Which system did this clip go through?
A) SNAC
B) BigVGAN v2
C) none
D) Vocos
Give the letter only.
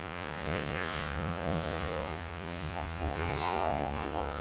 D